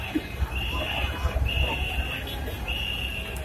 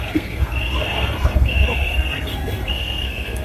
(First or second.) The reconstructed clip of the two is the second